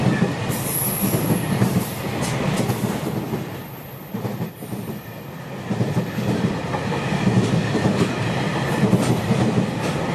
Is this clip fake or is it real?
real